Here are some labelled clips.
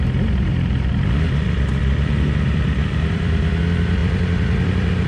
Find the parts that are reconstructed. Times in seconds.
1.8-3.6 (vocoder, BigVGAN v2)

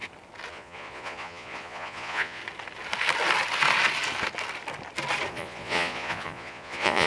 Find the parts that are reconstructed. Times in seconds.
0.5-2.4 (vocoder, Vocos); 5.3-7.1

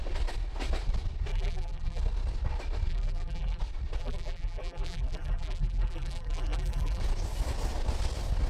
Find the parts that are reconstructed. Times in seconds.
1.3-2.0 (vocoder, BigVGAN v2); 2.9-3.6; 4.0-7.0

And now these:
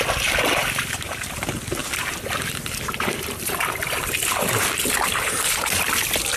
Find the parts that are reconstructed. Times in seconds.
0.6-1.4 (vocoder, BigVGAN v2); 1.8-5.6

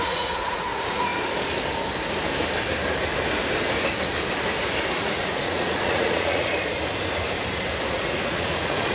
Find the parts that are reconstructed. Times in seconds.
0.0-1.1 (vocoder, Vocos); 4.9-6.5; 7.9-8.9